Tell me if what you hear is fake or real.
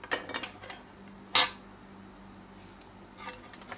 real